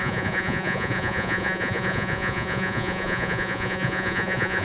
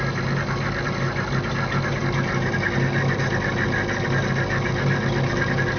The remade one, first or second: first